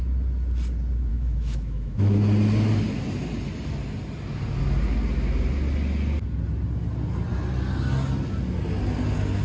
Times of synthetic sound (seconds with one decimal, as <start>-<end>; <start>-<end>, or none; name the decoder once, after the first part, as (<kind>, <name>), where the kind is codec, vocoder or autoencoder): 1.1-2.2 (autoencoder, DAC-VAE)